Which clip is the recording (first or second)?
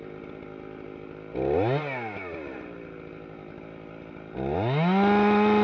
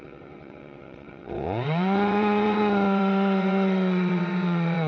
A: first